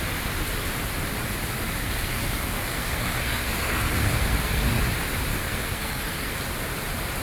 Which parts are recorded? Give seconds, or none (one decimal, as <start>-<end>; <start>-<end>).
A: 0.0-1.8; 4.8-5.3; 6.4-7.2